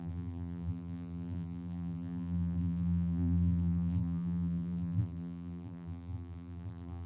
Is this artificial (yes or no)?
yes